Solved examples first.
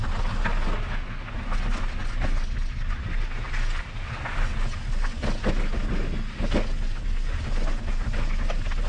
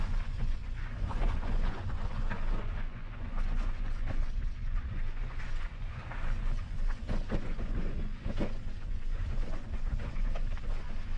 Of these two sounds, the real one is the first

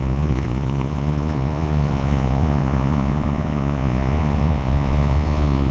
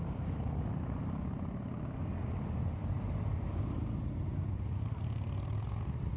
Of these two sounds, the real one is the second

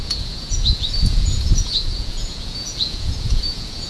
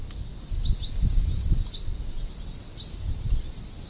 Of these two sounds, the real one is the second